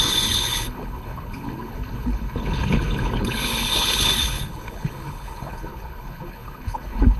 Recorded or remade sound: remade